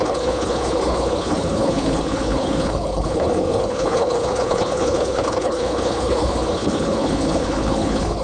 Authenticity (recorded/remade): remade